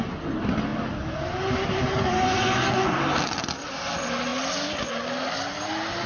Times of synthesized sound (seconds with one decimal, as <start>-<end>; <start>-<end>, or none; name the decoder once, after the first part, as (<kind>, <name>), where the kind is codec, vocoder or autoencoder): none